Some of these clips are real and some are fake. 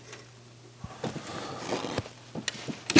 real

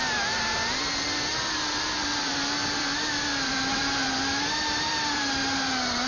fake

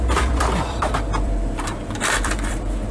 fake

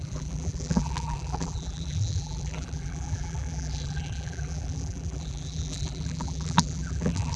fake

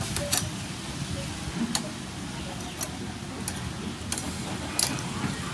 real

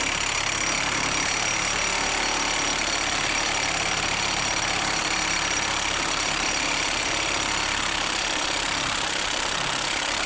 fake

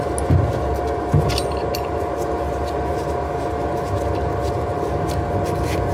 real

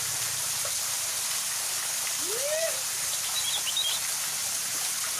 real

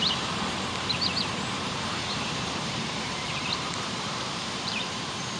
fake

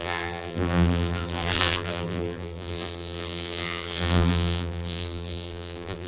fake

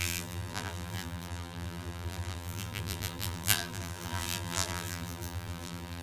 fake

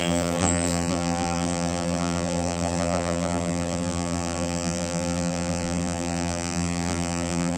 fake